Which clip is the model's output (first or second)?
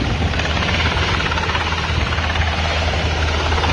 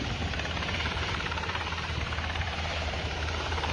second